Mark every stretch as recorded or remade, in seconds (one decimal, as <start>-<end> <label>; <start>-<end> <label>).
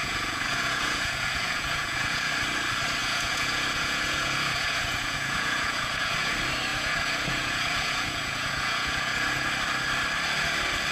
0.0-2.3 remade; 2.3-3.0 recorded; 3.0-6.3 remade; 6.3-6.7 recorded; 6.7-9.5 remade; 9.5-10.9 recorded